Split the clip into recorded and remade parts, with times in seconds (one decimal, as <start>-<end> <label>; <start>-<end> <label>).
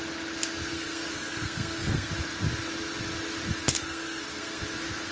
0.0-0.7 recorded; 0.7-2.1 remade; 2.1-3.7 recorded; 3.7-4.6 remade; 4.6-5.1 recorded